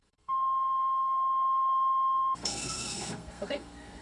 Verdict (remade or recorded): remade